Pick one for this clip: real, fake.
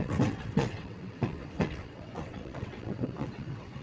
fake